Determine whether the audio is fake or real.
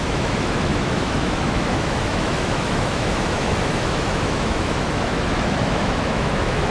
fake